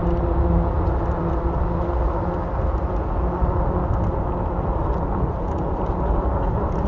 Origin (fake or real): real